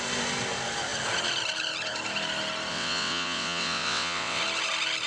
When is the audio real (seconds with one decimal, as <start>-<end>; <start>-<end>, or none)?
0.0-2.7; 4.4-5.1